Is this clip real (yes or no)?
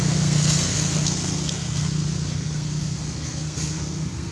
no